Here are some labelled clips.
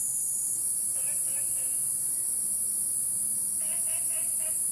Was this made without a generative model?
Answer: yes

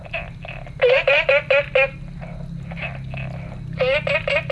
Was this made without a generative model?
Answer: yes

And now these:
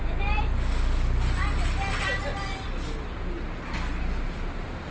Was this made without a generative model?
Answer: yes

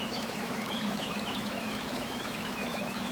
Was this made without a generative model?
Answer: no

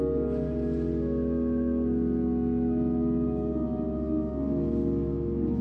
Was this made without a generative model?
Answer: yes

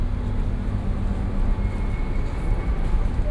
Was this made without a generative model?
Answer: yes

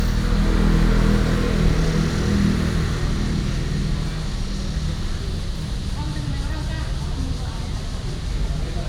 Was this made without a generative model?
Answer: yes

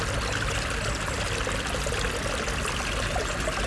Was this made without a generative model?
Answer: yes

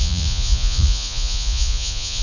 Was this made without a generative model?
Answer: no